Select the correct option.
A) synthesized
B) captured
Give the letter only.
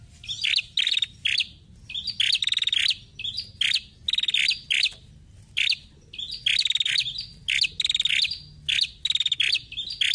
B